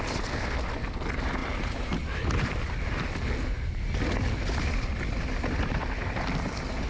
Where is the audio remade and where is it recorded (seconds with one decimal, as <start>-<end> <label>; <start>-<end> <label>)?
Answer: 0.0-6.9 recorded